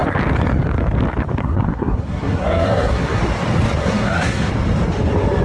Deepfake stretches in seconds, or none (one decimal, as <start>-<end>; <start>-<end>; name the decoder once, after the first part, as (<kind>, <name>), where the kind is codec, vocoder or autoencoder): 1.4-3.2 (codec, SNAC); 3.8-4.5